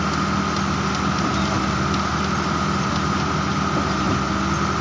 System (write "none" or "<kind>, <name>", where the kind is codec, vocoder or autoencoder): none